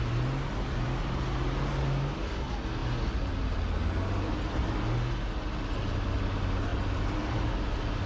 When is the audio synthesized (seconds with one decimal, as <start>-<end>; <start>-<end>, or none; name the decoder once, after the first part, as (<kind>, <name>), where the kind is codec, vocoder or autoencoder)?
none